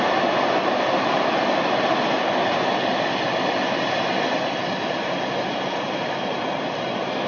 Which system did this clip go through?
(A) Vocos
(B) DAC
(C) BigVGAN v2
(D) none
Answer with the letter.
D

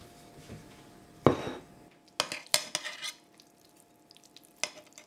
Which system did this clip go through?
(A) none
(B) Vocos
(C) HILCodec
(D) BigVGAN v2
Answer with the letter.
A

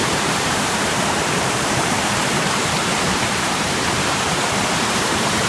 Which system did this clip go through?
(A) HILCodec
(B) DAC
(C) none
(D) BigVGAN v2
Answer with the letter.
D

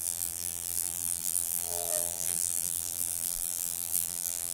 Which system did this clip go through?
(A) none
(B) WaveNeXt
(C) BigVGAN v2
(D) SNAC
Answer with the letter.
C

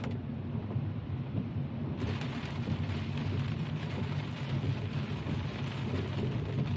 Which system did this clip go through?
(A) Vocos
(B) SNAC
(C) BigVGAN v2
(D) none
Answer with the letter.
C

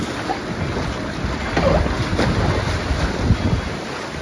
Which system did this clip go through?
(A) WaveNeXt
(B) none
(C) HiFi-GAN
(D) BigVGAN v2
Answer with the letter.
B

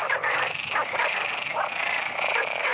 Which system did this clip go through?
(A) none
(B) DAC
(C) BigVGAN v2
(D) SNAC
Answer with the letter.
C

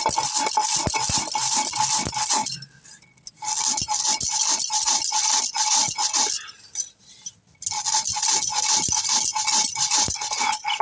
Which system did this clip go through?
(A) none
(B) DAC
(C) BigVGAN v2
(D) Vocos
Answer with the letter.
A